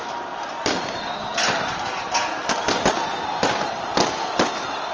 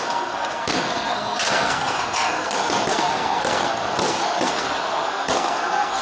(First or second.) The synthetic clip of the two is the second